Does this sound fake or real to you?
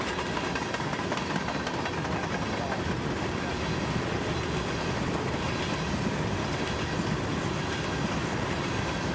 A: real